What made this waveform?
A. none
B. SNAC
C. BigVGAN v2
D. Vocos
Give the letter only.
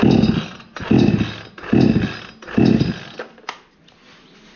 A